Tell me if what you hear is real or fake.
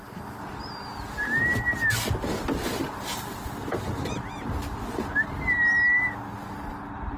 real